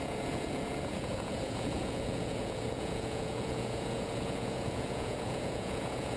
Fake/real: fake